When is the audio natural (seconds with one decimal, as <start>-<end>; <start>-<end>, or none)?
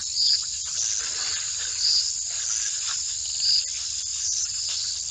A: 0.0-4.1; 4.6-5.1